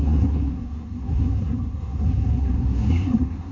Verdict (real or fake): fake